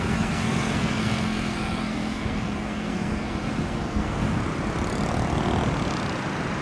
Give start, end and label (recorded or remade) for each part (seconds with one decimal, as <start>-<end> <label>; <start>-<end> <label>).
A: 0.0-4.4 remade; 4.4-6.6 recorded